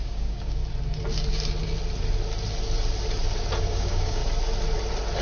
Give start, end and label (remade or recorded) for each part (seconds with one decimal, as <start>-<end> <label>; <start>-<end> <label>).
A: 0.0-0.6 remade; 0.6-3.6 recorded; 3.6-4.2 remade; 4.2-5.2 recorded